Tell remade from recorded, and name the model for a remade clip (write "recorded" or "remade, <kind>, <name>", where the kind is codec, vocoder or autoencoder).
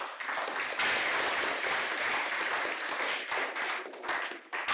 recorded